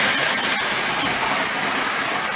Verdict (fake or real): real